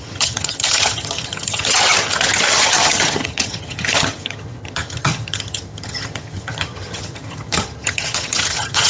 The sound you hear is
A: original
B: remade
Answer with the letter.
B